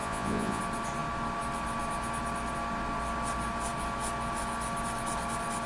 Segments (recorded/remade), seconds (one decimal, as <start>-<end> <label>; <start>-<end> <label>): 0.0-0.6 remade; 0.6-5.7 recorded